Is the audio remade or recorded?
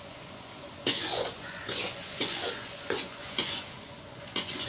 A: remade